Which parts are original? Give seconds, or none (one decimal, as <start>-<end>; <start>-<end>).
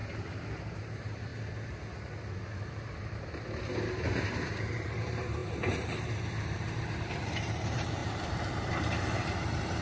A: 0.0-0.8; 1.3-4.6